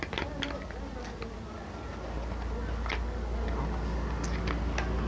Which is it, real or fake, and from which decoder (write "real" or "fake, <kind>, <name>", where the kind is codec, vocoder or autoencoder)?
real